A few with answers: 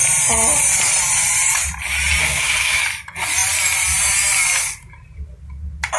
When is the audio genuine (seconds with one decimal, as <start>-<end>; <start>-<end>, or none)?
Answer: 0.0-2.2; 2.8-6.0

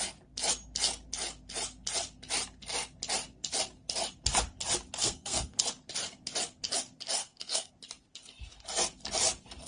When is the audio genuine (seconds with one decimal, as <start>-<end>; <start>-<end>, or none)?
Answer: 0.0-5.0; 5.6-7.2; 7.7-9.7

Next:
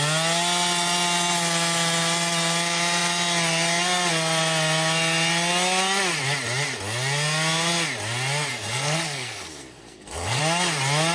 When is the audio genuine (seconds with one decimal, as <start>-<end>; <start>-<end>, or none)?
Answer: 0.0-8.5; 10.4-11.1

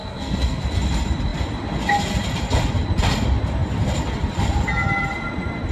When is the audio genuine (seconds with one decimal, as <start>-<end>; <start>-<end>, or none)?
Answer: 0.6-5.7

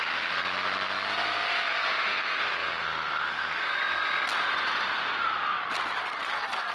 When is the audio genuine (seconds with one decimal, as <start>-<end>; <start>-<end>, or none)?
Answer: 0.0-2.1; 3.7-6.7